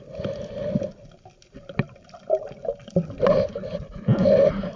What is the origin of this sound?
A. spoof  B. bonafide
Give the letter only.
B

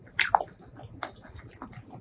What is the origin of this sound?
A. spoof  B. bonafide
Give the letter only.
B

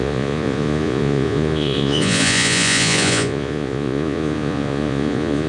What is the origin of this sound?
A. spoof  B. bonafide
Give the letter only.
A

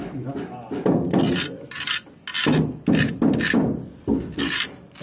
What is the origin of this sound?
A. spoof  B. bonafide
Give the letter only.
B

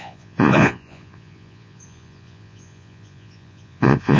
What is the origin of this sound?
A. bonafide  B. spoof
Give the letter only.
B